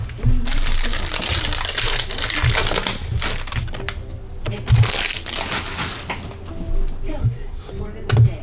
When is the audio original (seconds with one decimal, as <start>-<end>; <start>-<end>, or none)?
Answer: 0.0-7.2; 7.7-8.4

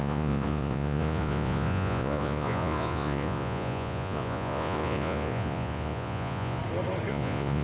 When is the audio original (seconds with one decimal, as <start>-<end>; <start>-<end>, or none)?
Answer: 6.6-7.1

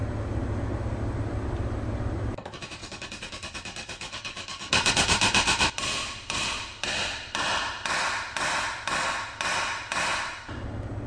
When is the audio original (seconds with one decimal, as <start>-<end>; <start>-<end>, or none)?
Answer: 0.0-2.8; 4.9-11.1

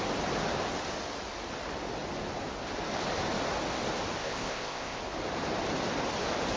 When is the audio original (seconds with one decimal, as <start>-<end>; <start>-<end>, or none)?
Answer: 0.0-4.2; 5.0-6.6

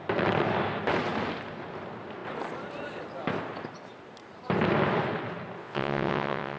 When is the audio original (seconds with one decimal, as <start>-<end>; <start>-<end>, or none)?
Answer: 0.0-5.6

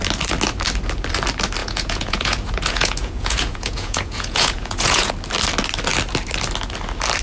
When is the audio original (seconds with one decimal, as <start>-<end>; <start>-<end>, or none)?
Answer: 0.0-1.6; 5.1-7.2

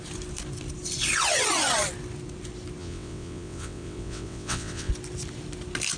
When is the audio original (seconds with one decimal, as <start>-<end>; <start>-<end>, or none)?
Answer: 0.0-2.8; 4.9-6.0

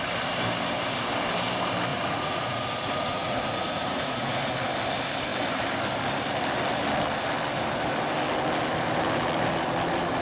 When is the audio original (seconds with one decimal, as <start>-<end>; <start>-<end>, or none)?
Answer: 0.0-1.9; 4.5-10.2